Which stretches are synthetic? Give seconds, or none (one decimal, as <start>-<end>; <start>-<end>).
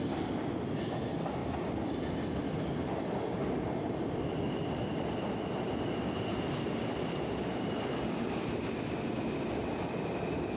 1.4-2.9; 3.4-8.5